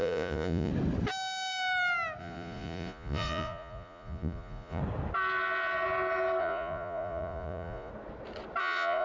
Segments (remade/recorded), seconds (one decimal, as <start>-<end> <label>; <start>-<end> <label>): 0.0-0.7 remade; 0.7-2.2 recorded; 2.2-4.8 remade; 4.8-6.4 recorded; 6.4-7.9 remade; 7.9-8.6 recorded; 8.6-9.0 remade